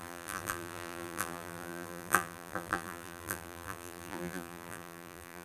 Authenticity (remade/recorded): remade